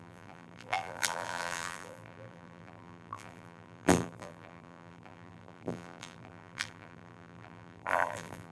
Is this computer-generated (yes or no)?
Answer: yes